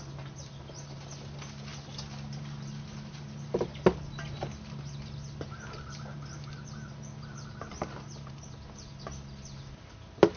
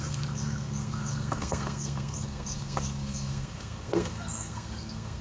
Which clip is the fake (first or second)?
second